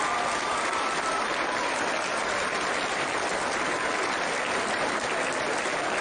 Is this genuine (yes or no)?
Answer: yes